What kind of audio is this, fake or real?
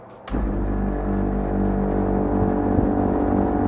real